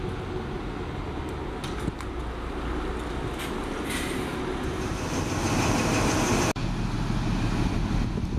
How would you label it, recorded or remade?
recorded